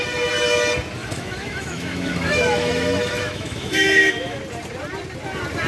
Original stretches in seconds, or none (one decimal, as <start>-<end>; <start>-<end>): 0.0-1.0; 4.4-5.7